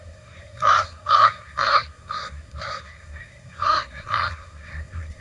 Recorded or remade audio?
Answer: remade